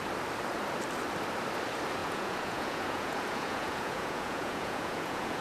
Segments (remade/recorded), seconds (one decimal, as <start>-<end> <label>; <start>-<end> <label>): 0.0-2.0 recorded; 2.0-5.4 remade